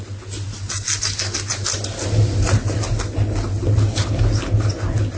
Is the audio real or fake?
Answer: real